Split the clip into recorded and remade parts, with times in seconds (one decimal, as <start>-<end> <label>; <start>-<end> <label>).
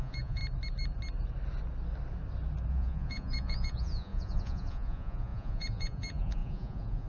0.0-0.4 remade; 0.4-2.7 recorded; 2.7-7.1 remade